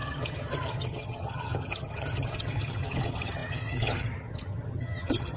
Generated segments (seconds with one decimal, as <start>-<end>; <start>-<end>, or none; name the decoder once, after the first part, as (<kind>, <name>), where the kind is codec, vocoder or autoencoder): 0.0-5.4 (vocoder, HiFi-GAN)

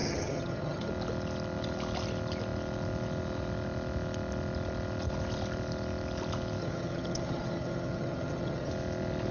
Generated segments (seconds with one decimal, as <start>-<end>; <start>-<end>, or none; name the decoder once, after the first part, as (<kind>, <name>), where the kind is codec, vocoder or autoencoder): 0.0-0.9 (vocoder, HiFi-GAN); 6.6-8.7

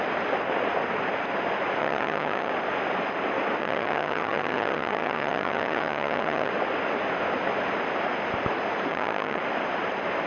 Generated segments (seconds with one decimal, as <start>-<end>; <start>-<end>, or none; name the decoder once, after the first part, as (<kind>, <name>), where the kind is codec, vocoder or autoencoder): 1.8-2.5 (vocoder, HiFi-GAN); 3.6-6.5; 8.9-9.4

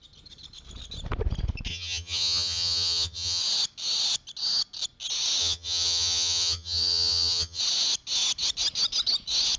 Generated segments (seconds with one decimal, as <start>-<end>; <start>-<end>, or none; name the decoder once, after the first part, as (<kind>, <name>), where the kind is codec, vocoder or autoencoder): 1.7-3.4 (vocoder, HiFi-GAN); 5.4-7.6